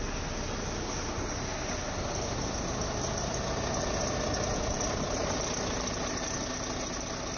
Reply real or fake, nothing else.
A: real